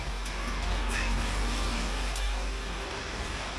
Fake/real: fake